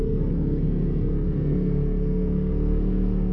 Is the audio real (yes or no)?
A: no